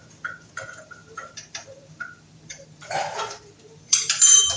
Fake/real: fake